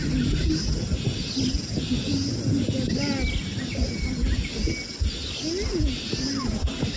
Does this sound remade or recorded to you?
recorded